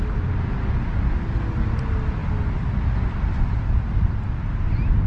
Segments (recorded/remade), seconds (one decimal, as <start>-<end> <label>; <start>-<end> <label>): 0.0-5.1 recorded